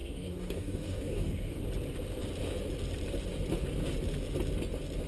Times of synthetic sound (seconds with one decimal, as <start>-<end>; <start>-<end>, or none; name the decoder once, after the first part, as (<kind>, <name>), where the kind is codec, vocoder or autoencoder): 0.0-1.6 (codec, DAC)